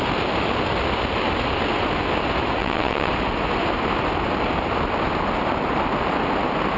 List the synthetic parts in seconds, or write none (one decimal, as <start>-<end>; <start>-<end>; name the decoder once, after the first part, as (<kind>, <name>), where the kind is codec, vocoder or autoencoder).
2.6-3.1 (vocoder, WaveNeXt)